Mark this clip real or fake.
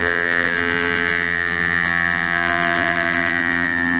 fake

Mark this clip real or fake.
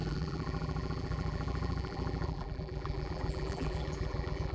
fake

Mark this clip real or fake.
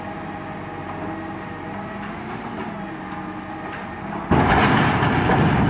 real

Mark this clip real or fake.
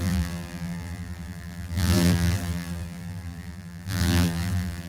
fake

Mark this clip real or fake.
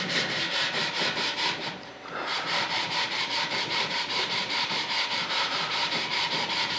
fake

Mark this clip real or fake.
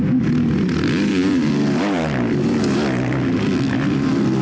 real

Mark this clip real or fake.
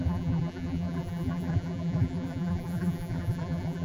fake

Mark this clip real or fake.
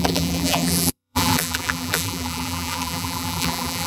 fake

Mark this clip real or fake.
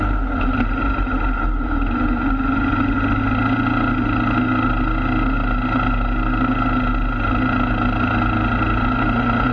real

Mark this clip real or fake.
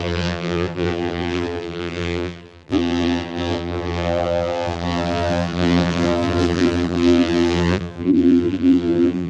fake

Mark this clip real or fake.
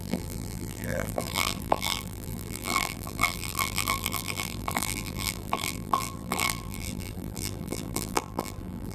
fake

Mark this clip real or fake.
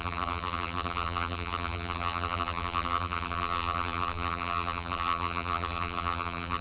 fake